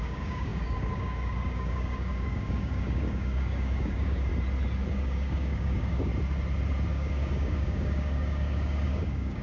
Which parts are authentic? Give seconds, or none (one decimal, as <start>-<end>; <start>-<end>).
4.3-4.9; 6.1-6.9